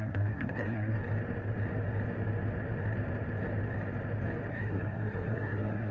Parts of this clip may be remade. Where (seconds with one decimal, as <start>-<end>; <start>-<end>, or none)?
0.0-1.0; 4.5-5.9